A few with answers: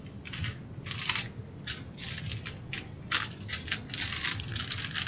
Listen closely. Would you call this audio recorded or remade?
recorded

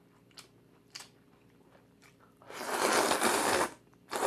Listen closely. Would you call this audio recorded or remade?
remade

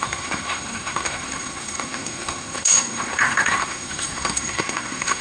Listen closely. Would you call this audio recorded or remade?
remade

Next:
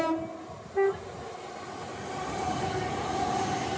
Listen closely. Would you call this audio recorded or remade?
recorded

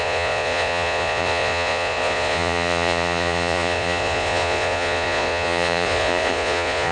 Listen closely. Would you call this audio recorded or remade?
remade